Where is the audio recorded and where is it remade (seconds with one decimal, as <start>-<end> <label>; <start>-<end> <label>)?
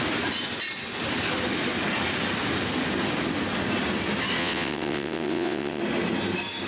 0.0-4.4 recorded; 4.4-5.8 remade; 5.8-6.7 recorded